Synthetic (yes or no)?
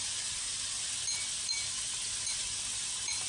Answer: no